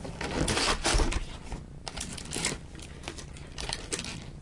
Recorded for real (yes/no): no